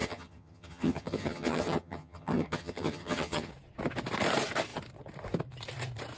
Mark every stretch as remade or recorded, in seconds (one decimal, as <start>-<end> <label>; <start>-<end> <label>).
0.0-3.5 remade; 3.5-6.2 recorded